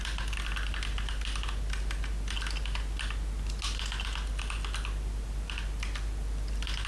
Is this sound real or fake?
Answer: real